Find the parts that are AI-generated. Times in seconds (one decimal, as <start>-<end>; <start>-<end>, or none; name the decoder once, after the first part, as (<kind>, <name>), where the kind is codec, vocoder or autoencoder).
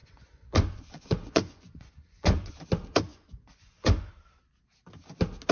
0.0-2.5 (vocoder, Vocos); 3.1-4.1